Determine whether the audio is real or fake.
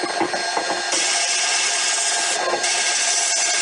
real